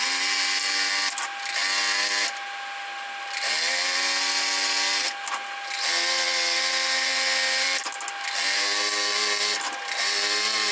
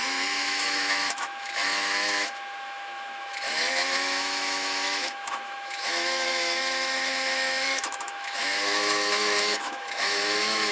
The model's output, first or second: second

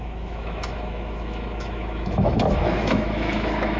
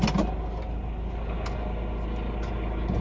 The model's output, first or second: first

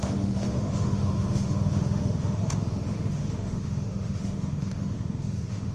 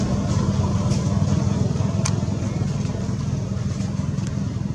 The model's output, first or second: first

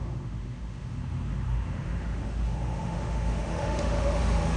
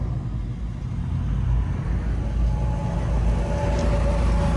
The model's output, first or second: first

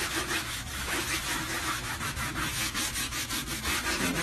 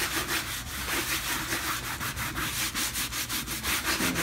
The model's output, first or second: first